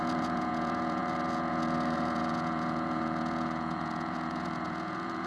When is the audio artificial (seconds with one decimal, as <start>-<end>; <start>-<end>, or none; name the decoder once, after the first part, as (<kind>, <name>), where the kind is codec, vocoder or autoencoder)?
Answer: 0.0-5.3 (vocoder, Vocos)